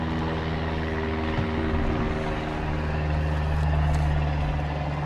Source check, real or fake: real